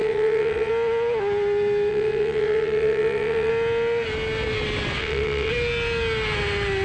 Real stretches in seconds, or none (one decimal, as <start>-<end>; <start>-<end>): 0.7-1.9; 3.5-5.0; 5.5-6.8